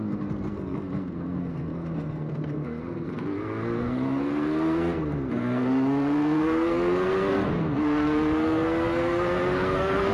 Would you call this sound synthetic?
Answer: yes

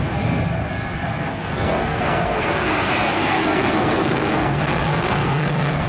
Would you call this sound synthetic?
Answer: yes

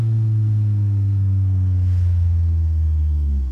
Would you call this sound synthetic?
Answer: yes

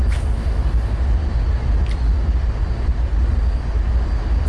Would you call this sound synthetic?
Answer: no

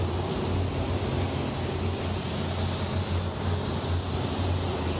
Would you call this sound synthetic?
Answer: no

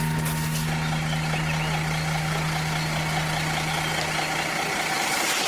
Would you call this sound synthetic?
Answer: no